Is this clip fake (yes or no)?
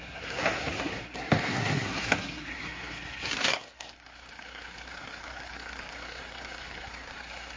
yes